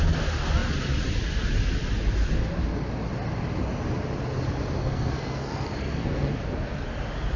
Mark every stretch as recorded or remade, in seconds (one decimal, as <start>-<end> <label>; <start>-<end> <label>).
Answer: 0.0-4.8 recorded; 4.8-6.4 remade; 6.4-7.4 recorded